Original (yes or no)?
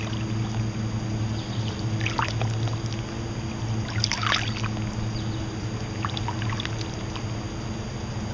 yes